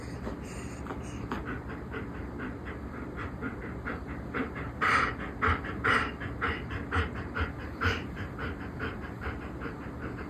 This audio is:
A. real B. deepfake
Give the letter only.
B